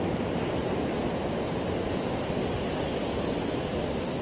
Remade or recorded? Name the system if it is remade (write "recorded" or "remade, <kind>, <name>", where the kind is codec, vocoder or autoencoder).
recorded